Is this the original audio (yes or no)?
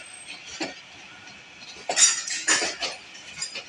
yes